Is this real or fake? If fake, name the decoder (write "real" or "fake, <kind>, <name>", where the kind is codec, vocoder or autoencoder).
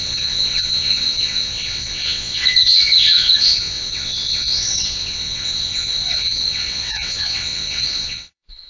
fake, vocoder, WaveNeXt